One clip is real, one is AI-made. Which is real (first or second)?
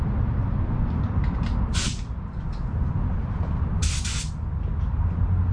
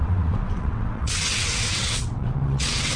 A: first